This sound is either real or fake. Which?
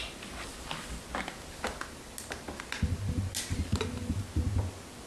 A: real